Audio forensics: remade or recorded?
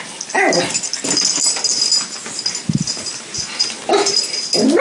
recorded